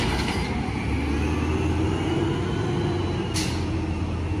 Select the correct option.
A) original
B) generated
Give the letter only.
A